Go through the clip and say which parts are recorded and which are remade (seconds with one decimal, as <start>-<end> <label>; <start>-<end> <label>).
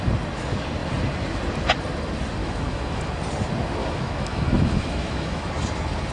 0.0-2.4 recorded; 2.4-3.1 remade; 3.1-3.8 recorded; 3.8-5.5 remade; 5.5-6.1 recorded